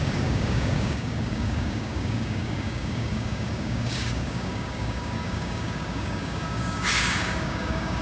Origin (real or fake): fake